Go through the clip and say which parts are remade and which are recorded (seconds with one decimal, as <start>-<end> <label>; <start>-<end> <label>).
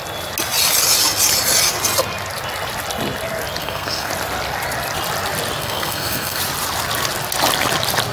0.0-3.6 recorded; 3.6-4.1 remade; 4.1-5.6 recorded; 5.6-6.4 remade; 6.4-8.1 recorded